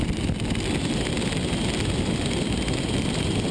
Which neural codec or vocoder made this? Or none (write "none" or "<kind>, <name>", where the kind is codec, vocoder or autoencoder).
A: none